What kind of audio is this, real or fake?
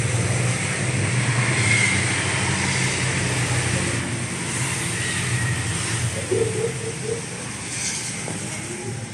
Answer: real